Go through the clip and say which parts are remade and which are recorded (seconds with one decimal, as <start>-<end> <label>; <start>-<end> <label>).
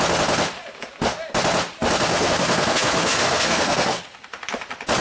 0.0-2.1 recorded; 2.1-4.0 remade; 4.0-5.0 recorded